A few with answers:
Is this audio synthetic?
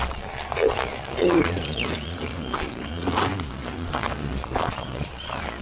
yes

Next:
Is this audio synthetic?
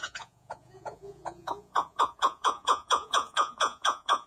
yes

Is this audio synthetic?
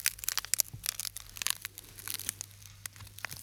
no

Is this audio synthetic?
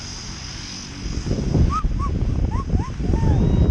no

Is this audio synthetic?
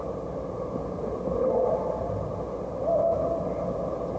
no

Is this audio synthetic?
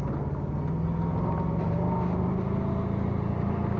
no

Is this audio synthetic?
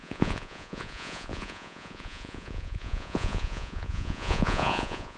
yes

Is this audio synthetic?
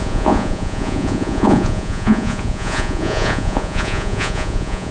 yes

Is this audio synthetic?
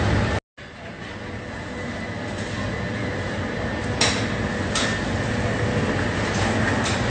no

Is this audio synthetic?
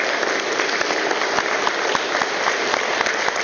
no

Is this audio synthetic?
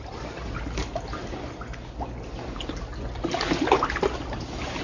no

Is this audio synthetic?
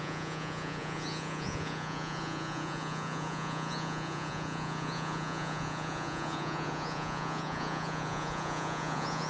yes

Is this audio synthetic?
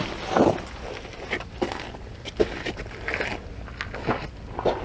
no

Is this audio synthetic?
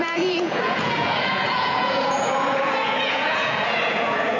yes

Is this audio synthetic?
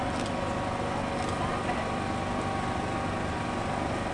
no